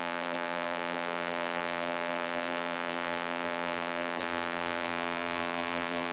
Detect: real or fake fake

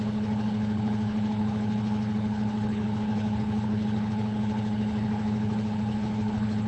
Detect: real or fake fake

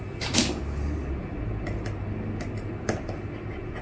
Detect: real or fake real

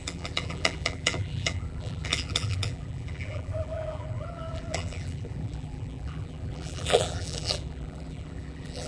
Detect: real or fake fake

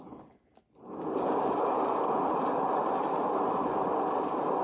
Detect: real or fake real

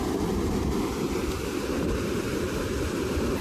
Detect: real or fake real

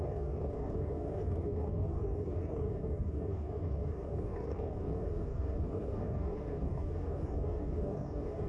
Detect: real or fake fake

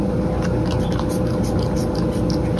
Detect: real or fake real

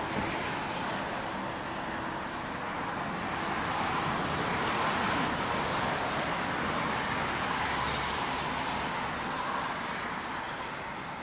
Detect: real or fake real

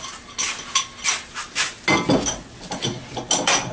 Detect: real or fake real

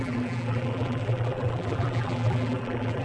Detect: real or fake fake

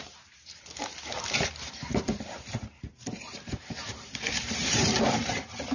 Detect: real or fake fake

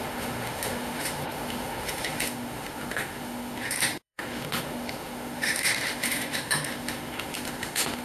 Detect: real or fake fake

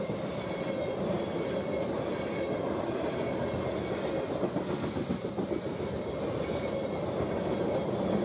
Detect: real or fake real